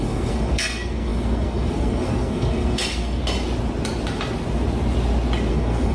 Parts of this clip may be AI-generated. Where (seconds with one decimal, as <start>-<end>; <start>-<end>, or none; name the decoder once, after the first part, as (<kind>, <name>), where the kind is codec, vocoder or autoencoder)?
0.0-3.2 (codec, SNAC); 5.5-5.9